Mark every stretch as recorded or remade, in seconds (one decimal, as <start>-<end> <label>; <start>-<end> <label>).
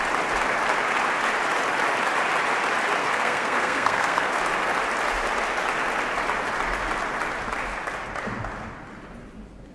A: 0.0-3.0 recorded; 3.0-4.4 remade; 4.4-9.7 recorded